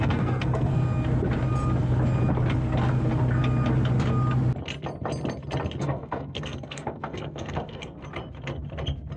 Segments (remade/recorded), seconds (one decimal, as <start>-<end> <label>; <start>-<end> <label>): 0.0-0.7 remade; 0.7-5.8 recorded; 5.8-8.0 remade; 8.0-9.2 recorded

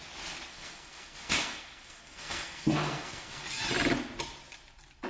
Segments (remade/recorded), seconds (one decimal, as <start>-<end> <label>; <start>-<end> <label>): 0.0-0.5 recorded; 0.5-3.6 remade; 3.6-5.1 recorded

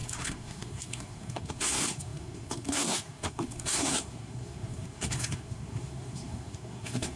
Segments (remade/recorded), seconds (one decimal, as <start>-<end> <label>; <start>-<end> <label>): 0.0-7.2 remade

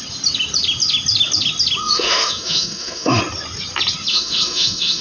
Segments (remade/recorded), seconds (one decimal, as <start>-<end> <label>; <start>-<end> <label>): 0.0-1.8 recorded; 1.8-3.2 remade; 3.2-4.1 recorded; 4.1-5.0 remade

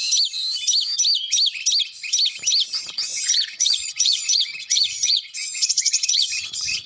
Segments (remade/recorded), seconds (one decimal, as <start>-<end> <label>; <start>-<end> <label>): 0.0-3.1 recorded; 3.1-6.9 remade

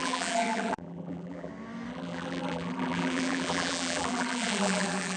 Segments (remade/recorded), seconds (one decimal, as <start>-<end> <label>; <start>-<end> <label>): 0.0-1.5 remade; 1.5-1.9 recorded; 1.9-5.2 remade